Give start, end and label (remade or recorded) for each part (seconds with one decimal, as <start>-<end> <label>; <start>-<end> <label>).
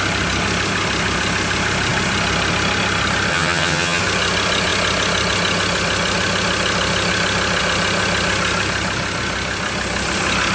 0.0-3.3 recorded; 3.3-4.0 remade; 4.0-10.5 recorded